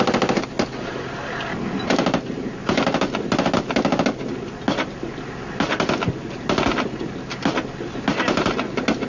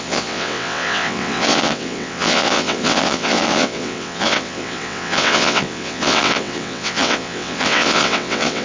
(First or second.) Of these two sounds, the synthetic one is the second